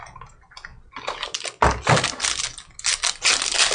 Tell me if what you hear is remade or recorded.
recorded